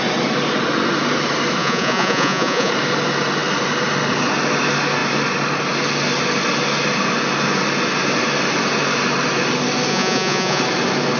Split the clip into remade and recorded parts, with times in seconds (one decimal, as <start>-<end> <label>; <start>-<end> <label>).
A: 0.0-1.6 recorded; 1.6-2.7 remade; 2.7-9.9 recorded; 9.9-10.6 remade; 10.6-11.2 recorded